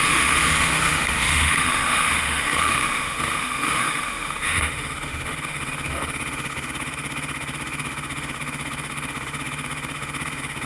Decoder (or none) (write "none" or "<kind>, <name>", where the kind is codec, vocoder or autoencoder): autoencoder, DAC-VAE